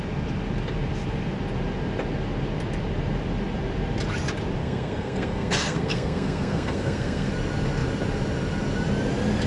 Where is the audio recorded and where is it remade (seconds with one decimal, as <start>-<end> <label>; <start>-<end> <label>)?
0.0-4.6 recorded; 4.6-7.3 remade; 7.3-9.5 recorded